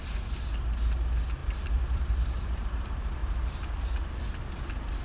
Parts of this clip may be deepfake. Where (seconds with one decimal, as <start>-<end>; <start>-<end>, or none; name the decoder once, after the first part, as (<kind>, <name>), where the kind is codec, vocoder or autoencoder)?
1.4-2.8 (vocoder, BigVGAN v2); 3.2-3.8